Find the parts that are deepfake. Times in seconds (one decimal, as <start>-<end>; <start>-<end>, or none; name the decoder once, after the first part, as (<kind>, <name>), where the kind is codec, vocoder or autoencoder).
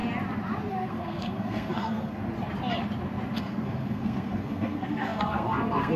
0.7-2.2 (codec, SNAC); 3.4-6.0